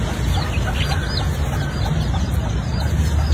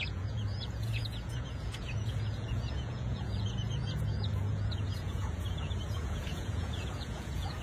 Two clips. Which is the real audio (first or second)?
first